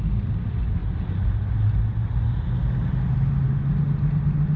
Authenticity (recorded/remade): recorded